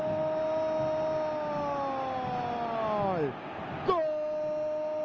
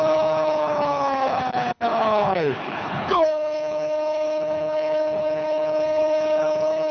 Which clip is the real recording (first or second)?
first